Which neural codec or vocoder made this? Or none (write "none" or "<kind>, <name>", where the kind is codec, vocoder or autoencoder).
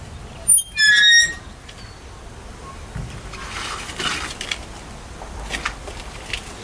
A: none